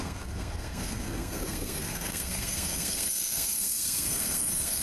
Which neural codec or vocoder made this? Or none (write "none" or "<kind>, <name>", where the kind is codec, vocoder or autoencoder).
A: codec, SNAC